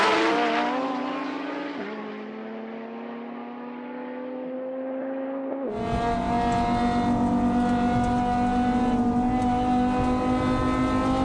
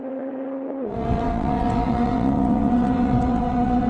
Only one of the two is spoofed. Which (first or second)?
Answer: second